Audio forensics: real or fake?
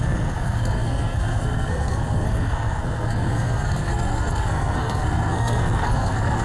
fake